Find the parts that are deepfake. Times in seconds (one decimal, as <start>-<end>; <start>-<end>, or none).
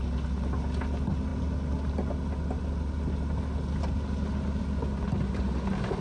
none